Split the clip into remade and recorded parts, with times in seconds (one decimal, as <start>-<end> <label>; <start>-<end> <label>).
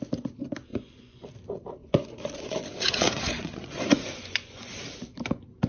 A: 0.0-0.7 recorded; 0.7-1.3 remade; 1.3-1.8 recorded; 1.8-4.8 remade; 4.8-5.7 recorded